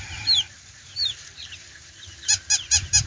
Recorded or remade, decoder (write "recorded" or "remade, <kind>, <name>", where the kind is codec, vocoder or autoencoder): remade, vocoder, BigVGAN v2